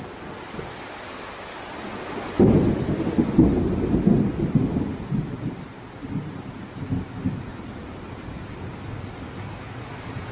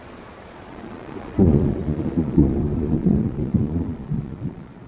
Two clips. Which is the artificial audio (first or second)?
second